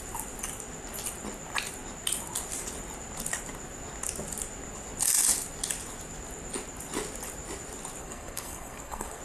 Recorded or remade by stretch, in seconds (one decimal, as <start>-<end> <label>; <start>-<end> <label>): 0.0-8.0 recorded; 8.0-9.2 remade